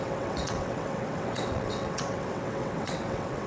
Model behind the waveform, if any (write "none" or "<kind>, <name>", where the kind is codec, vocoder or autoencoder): vocoder, WaveNeXt